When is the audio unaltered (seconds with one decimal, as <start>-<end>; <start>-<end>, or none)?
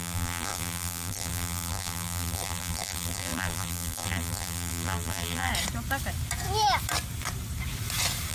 5.5-8.3